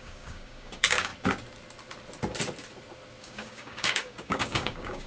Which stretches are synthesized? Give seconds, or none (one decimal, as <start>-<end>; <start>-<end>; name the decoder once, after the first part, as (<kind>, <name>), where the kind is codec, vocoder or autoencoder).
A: 0.0-1.1 (codec, DAC); 3.2-5.1